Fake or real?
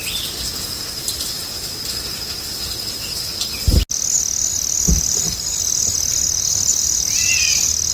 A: real